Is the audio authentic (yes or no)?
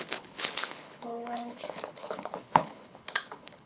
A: no